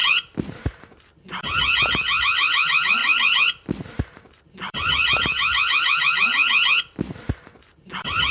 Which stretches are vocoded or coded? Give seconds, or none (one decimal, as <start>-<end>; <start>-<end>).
0.0-1.1; 2.2-6.3; 7.6-8.3